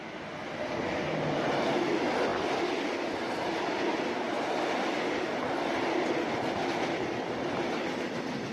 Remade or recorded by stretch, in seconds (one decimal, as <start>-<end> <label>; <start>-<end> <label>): 0.0-8.5 recorded